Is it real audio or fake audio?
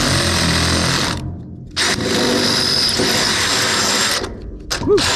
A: real